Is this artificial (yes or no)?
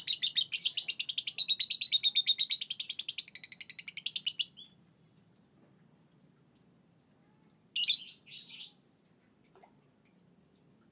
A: no